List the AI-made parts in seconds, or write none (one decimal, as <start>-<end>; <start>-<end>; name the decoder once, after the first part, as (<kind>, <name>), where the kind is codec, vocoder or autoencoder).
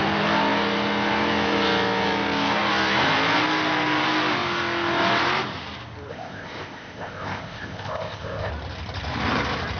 6.1-8.5 (codec, ZipCodec)